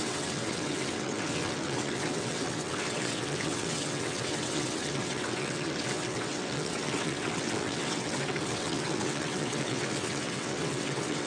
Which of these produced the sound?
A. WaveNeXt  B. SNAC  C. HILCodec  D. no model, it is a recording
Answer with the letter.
A